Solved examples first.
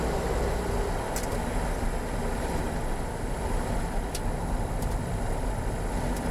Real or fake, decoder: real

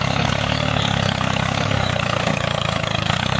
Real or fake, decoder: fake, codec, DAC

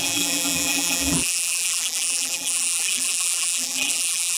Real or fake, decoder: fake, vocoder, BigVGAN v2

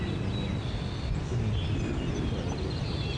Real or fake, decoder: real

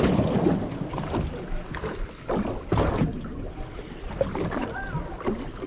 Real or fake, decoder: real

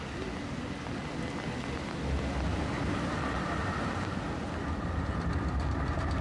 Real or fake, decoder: real